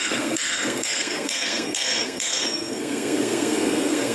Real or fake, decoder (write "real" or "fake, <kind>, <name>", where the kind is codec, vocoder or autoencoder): fake, codec, SNAC